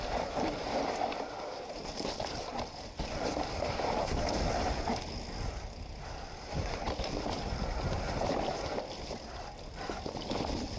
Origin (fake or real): fake